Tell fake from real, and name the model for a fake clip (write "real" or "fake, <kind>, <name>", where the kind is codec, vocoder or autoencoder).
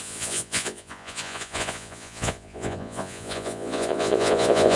fake, vocoder, Vocos